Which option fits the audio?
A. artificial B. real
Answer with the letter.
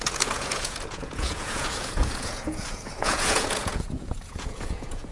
A